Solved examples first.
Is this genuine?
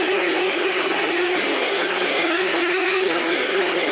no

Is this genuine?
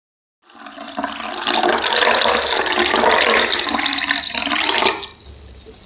yes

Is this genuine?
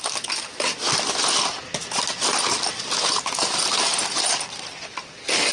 yes